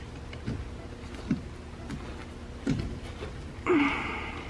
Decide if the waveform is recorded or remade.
recorded